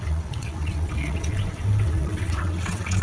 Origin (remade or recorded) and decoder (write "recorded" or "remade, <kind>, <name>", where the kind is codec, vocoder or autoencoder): remade, vocoder, WaveNeXt